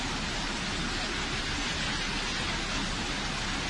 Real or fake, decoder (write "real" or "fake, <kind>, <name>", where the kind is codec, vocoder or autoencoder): real